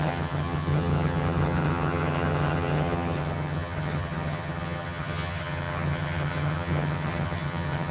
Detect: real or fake fake